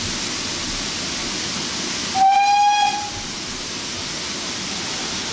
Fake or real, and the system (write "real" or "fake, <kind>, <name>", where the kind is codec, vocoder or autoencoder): real